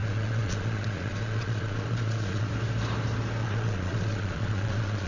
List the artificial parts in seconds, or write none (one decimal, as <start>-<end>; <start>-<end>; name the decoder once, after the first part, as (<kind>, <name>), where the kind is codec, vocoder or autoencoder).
0.0-2.5 (vocoder, Vocos); 3.4-5.1